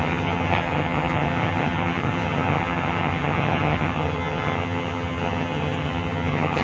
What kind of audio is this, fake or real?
fake